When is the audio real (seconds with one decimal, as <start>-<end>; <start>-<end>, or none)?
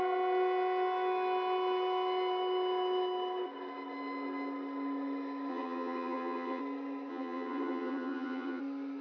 0.0-5.5; 6.6-7.1; 8.6-9.0